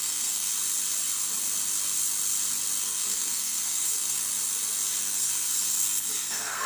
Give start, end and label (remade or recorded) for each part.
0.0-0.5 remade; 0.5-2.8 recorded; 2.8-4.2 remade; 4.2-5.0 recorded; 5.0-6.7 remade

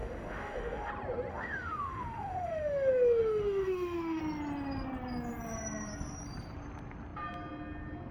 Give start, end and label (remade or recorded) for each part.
0.0-0.9 remade; 0.9-1.3 recorded; 1.3-4.2 remade; 4.2-8.1 recorded